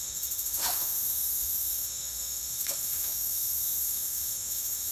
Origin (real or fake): fake